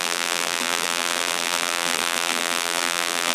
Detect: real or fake fake